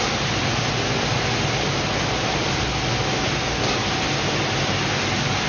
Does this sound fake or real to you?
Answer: real